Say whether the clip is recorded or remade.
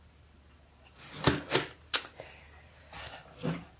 recorded